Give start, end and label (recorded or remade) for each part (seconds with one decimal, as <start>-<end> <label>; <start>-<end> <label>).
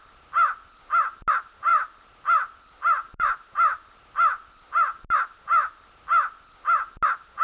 0.0-1.7 recorded; 1.7-3.5 remade; 3.5-7.4 recorded